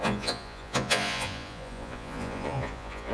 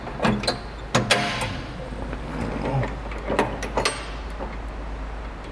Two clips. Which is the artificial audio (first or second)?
first